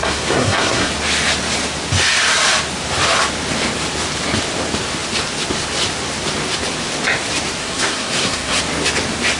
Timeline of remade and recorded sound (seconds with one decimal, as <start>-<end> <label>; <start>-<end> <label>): 0.0-0.9 remade; 0.9-7.6 recorded; 7.6-8.6 remade; 8.6-9.4 recorded